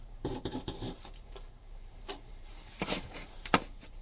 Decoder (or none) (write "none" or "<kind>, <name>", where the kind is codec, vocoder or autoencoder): vocoder, BigVGAN v2